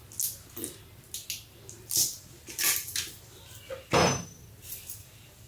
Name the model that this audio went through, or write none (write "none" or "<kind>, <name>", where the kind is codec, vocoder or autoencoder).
none